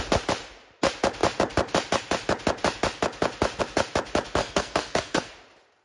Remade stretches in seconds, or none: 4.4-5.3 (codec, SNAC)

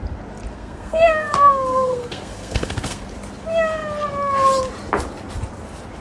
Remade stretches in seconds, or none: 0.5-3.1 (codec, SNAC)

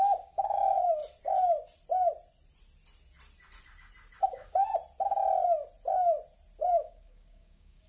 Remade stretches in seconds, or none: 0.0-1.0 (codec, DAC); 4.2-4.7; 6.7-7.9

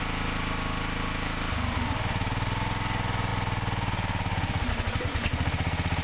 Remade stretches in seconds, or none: none

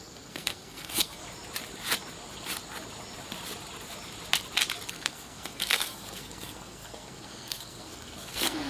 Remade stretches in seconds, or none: 0.0-1.2 (codec, SNAC); 4.9-8.7

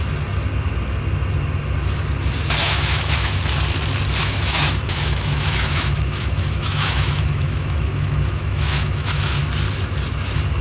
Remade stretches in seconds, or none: 2.6-3.4 (autoencoder, DAC-VAE); 4.2-9.4

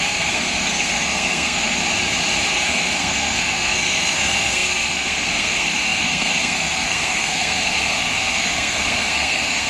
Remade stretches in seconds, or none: 0.0-1.8 (codec, SNAC); 2.5-9.7

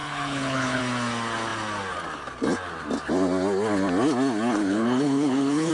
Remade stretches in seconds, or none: 0.0-0.8 (codec, HILCodec); 4.6-5.7